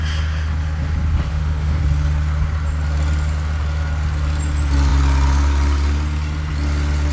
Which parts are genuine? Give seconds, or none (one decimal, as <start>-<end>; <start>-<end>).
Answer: 0.0-1.3; 1.8-7.1